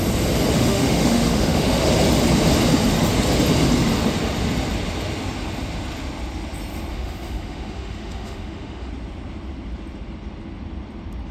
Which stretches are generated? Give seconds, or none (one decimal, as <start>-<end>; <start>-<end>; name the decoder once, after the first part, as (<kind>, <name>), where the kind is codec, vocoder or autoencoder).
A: 0.5-1.9 (autoencoder, DAC-VAE); 6.9-8.9